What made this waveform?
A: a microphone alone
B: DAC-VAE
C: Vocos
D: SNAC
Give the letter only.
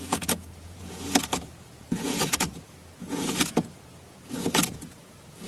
C